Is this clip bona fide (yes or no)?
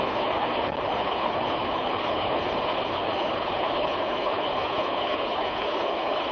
no